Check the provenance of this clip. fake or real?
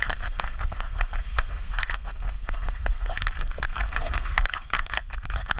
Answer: fake